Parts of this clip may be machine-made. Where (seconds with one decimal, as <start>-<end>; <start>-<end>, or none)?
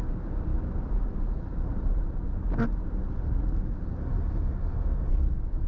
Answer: 4.0-5.1